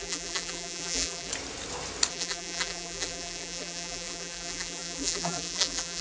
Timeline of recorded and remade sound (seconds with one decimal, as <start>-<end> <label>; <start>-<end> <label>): 0.0-1.3 remade; 1.3-2.1 recorded; 2.1-6.0 remade

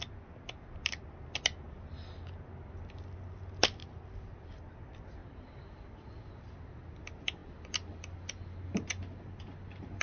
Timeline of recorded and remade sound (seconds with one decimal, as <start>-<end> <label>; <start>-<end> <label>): 0.0-10.0 recorded

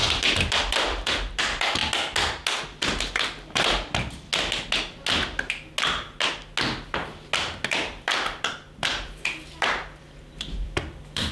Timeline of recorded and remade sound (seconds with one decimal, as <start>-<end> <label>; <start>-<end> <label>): 0.0-1.8 remade; 1.8-2.6 recorded; 2.6-4.3 remade; 4.3-7.8 recorded; 7.8-11.3 remade

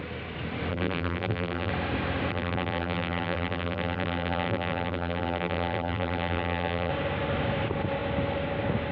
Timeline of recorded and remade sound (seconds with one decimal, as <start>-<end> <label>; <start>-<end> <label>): 0.0-0.7 recorded; 0.7-1.7 remade; 1.7-2.3 recorded; 2.3-6.9 remade; 6.9-8.9 recorded

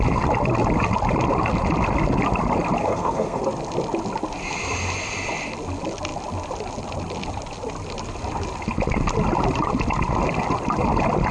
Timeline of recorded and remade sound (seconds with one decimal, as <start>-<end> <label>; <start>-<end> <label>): 0.0-2.8 recorded; 2.8-3.4 remade; 3.4-11.3 recorded

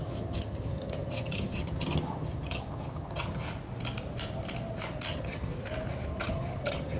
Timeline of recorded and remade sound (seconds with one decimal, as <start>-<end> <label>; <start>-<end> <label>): 0.0-3.4 remade; 3.4-5.1 recorded; 5.1-5.5 remade; 5.5-6.2 recorded; 6.2-7.0 remade

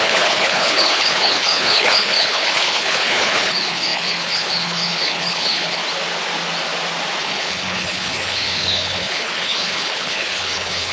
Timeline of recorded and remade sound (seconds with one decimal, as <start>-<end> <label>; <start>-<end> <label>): 0.0-5.8 remade; 5.8-7.2 recorded; 7.2-10.9 remade